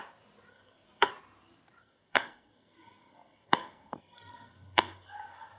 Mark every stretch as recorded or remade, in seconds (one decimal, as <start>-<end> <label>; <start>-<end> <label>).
0.0-0.5 recorded; 0.5-1.1 remade; 1.1-1.8 recorded; 1.8-5.6 remade